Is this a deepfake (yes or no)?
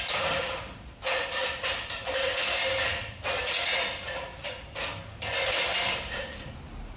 no